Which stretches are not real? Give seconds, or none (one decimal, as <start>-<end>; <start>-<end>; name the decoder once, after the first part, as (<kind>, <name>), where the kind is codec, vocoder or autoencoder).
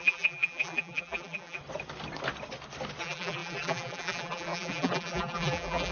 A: 0.0-1.6 (vocoder, BigVGAN v2); 3.0-5.9